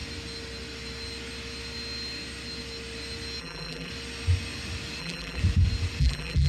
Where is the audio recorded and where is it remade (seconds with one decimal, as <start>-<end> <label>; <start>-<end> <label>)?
0.0-3.4 recorded; 3.4-3.9 remade; 3.9-5.0 recorded; 5.0-5.4 remade; 5.4-6.0 recorded; 6.0-6.5 remade